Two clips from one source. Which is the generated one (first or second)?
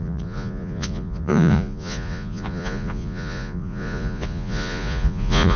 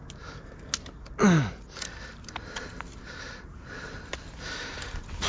first